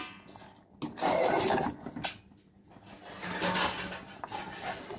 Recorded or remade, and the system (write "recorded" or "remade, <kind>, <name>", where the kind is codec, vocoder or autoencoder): recorded